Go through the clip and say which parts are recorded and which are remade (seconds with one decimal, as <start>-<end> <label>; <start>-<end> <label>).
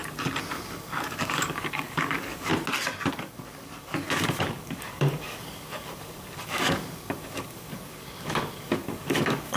0.0-0.5 recorded; 0.5-2.5 remade; 2.5-3.1 recorded; 3.1-9.6 remade